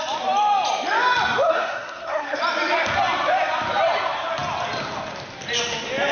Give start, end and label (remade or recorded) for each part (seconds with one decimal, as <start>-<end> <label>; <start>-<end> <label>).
0.0-1.5 recorded; 1.5-2.4 remade; 2.4-6.1 recorded